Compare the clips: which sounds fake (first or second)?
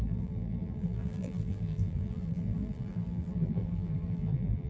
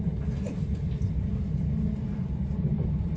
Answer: first